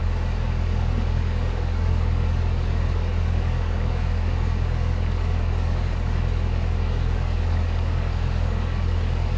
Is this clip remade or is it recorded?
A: remade